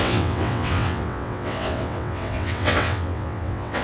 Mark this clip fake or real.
fake